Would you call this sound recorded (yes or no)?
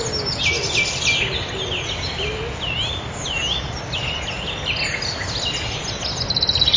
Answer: yes